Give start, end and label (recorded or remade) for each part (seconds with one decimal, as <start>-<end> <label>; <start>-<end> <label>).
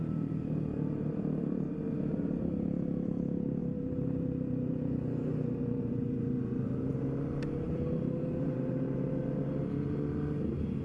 0.0-10.8 recorded